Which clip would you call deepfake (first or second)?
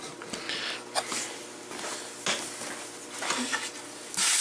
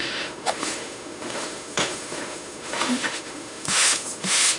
second